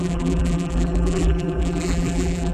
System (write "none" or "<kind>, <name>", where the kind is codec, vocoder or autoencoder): vocoder, BigVGAN v2